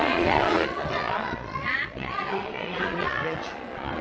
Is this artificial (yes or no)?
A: yes